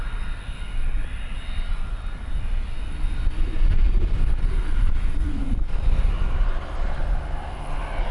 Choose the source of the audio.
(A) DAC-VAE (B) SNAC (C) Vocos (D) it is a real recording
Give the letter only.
D